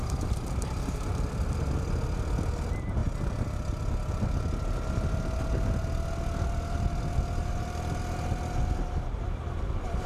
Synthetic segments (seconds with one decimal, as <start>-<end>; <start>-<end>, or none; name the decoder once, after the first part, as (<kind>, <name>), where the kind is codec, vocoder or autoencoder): none